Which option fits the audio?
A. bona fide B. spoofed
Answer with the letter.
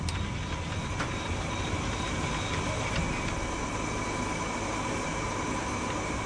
A